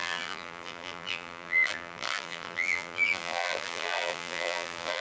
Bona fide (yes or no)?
no